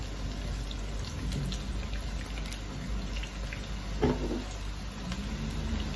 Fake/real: real